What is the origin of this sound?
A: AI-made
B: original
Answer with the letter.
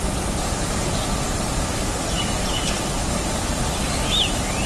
B